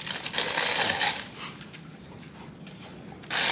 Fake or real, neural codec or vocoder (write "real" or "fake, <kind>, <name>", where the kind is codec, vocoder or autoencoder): real